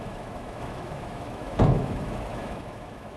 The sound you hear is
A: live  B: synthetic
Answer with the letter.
B